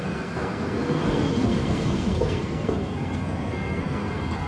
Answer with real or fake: fake